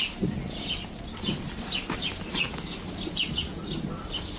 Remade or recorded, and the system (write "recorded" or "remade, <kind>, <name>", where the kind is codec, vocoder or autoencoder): recorded